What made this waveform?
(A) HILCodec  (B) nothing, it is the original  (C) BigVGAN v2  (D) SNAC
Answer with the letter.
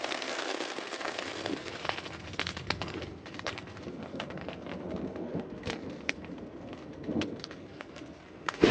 D